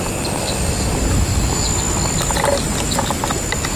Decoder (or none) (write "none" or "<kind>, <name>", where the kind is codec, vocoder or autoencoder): none